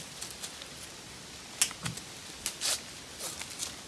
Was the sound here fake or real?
real